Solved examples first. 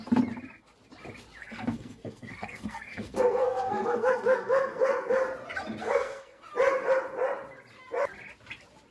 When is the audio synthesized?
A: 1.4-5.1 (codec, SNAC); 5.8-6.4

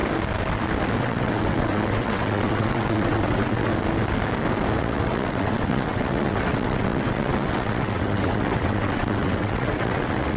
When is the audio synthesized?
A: 1.0-3.7 (vocoder, WaveNeXt); 4.8-10.4

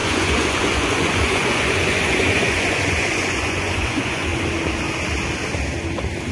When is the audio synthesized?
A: 0.0-4.3 (vocoder, Vocos)

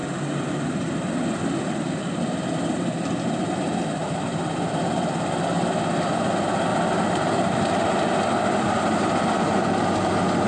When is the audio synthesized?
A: 4.0-5.1 (vocoder, BigVGAN v2); 6.7-8.4

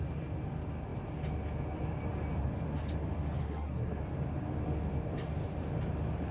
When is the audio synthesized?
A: 3.4-4.0 (codec, SNAC)

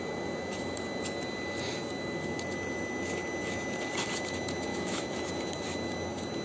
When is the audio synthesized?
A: 4.7-5.3 (autoencoder, DAC-VAE)

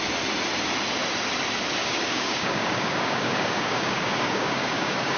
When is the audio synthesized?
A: 1.8-5.2 (codec, DAC)

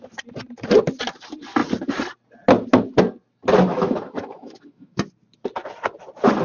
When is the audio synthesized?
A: 3.7-5.1 (autoencoder, DAC-VAE)